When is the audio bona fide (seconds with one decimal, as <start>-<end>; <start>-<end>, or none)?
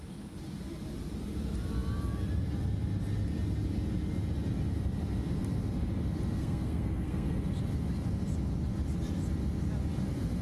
0.0-6.4; 7.4-10.4